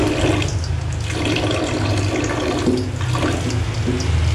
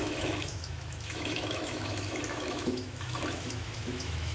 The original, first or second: first